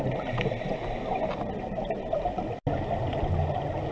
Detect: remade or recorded recorded